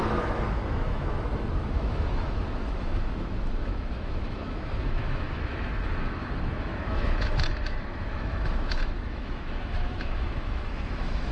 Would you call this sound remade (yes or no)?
yes